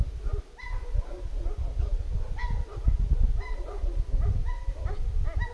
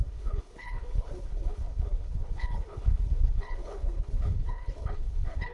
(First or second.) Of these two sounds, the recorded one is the first